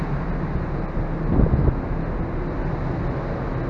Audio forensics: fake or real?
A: real